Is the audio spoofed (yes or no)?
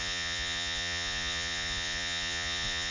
yes